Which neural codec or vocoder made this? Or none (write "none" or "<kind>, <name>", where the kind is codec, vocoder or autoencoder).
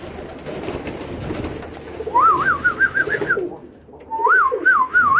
none